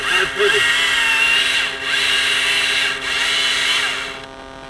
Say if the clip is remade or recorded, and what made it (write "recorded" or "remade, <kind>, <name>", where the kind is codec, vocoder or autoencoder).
recorded